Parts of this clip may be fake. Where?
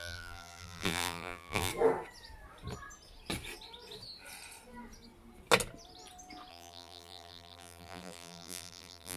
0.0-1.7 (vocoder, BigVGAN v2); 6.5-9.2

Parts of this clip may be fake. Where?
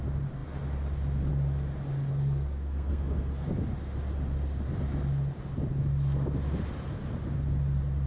2.1-3.5 (codec, SNAC)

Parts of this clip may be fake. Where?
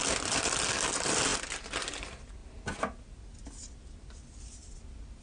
none